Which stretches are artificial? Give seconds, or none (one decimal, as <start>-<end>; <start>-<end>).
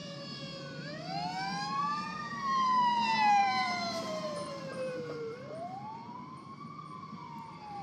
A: 3.4-6.6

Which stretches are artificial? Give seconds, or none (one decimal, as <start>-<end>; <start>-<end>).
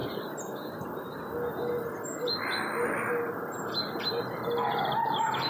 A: none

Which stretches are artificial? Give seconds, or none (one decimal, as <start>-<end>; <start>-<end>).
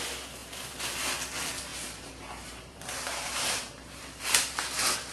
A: 0.4-1.0; 1.7-4.2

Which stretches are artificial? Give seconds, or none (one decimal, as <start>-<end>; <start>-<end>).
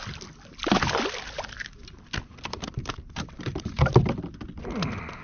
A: 2.3-4.0